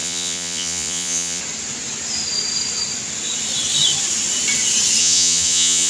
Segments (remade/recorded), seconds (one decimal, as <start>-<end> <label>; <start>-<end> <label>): 0.0-1.4 remade; 1.4-5.0 recorded; 5.0-5.9 remade